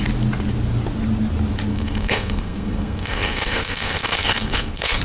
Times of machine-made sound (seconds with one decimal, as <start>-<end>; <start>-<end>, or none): 1.7-5.0